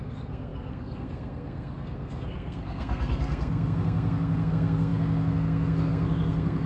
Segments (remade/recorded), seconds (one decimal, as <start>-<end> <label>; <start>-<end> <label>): 0.0-6.7 remade